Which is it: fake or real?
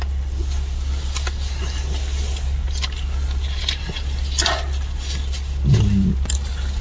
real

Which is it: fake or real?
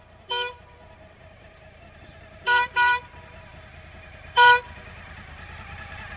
fake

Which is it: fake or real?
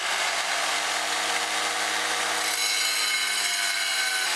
real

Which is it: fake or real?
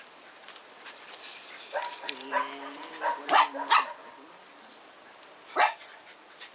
real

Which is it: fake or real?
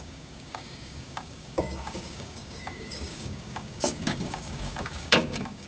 fake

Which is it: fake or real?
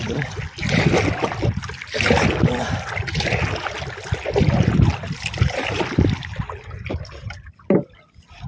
real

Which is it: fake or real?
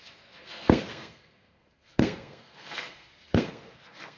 fake